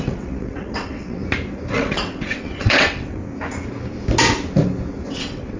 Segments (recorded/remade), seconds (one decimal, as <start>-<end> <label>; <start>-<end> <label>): 0.0-1.2 remade; 1.2-1.7 recorded; 1.7-3.2 remade; 3.2-5.0 recorded; 5.0-5.6 remade